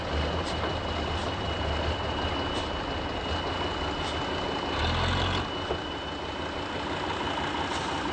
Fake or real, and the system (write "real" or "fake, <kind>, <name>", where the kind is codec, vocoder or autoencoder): real